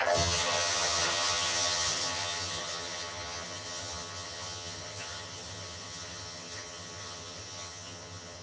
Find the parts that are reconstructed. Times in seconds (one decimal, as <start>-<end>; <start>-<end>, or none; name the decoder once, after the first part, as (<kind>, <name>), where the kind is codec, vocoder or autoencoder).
0.0-8.4 (vocoder, HiFi-GAN)